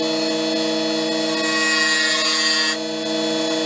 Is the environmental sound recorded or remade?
recorded